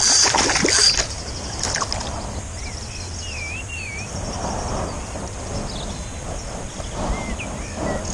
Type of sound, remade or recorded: recorded